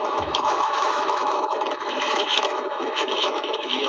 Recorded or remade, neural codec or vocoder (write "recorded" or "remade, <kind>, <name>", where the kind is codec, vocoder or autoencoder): remade, autoencoder, DAC-VAE